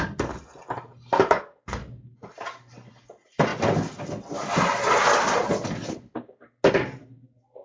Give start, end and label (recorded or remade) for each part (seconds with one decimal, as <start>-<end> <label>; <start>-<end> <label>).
0.0-7.6 recorded